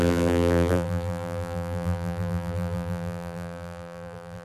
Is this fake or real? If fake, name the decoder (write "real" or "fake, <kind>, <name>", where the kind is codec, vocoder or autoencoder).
fake, vocoder, BigVGAN v2